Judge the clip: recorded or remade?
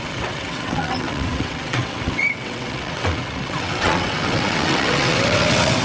remade